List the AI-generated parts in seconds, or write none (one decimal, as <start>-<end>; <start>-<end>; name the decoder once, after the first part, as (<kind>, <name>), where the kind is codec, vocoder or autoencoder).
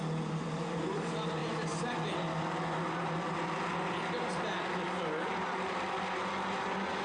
none